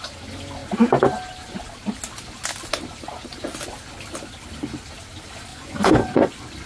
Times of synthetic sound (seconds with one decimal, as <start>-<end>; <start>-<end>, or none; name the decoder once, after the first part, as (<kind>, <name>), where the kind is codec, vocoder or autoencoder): 5.5-6.3 (vocoder, Vocos)